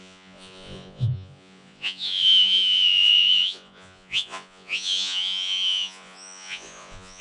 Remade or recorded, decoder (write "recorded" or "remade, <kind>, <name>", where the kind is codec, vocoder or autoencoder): remade, vocoder, Vocos